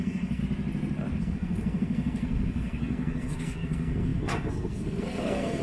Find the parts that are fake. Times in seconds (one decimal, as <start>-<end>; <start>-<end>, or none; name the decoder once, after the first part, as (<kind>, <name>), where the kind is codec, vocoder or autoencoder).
0.0-0.4 (codec, SNAC); 1.2-5.6